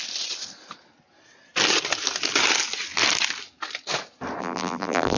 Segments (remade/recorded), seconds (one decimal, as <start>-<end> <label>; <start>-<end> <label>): 0.0-4.4 recorded; 4.4-5.2 remade